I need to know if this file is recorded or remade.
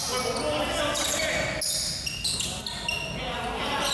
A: recorded